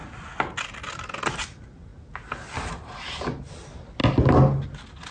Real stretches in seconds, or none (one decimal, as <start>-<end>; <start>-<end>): 0.0-5.1